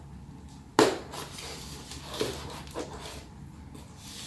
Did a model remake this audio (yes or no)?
no